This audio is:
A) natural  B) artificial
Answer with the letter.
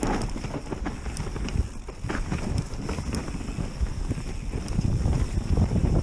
A